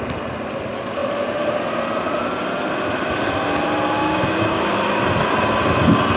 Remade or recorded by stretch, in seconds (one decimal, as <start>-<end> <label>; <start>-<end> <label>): 0.0-4.0 recorded; 4.0-5.0 remade; 5.0-6.2 recorded